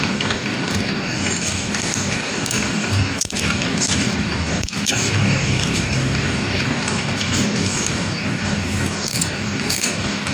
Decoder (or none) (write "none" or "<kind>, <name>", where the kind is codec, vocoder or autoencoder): codec, DAC